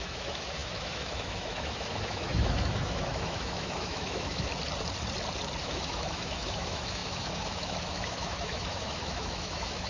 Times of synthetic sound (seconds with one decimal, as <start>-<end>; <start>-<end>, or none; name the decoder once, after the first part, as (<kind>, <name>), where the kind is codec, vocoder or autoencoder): 0.0-4.5 (autoencoder, DAC-VAE); 5.6-9.9